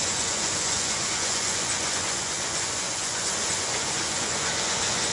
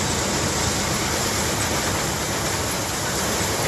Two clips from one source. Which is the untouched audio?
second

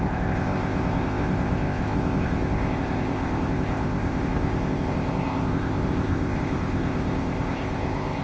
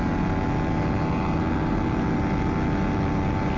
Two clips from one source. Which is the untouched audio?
second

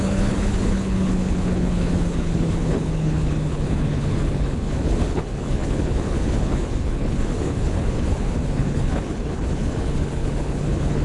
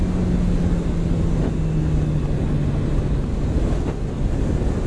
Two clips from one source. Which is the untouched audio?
second